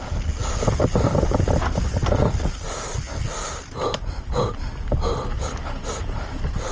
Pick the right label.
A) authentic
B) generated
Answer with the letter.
A